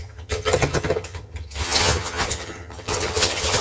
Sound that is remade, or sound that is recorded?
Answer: remade